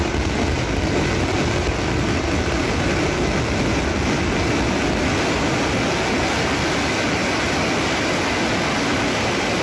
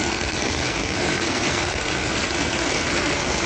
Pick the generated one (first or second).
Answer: second